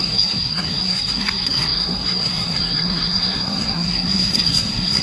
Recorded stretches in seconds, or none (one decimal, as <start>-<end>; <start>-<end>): none